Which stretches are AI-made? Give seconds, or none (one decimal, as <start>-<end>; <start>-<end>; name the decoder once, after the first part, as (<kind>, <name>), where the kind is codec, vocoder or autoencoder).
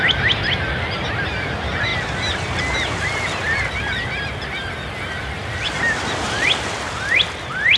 none